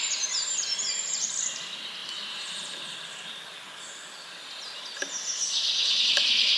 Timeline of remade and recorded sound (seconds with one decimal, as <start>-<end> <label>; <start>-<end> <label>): 0.0-2.0 remade; 2.0-6.0 recorded; 6.0-6.6 remade